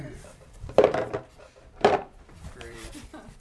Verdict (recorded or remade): remade